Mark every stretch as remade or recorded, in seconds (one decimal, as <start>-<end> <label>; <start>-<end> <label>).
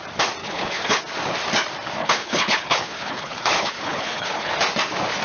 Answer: 0.0-0.4 recorded; 0.4-1.0 remade; 1.0-2.0 recorded; 2.0-4.5 remade; 4.5-5.2 recorded